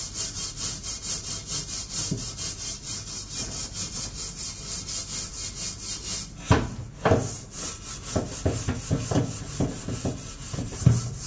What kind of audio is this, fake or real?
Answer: real